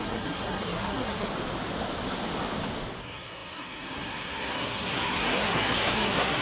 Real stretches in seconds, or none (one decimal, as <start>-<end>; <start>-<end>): 1.3-3.0